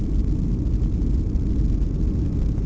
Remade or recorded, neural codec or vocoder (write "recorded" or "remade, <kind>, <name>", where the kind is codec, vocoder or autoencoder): recorded